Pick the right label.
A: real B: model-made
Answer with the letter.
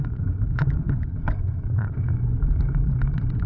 B